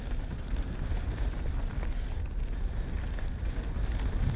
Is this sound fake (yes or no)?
no